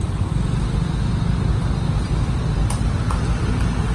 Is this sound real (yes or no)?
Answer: yes